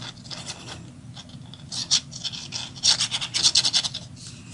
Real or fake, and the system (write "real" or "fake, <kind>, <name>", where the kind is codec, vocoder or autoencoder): real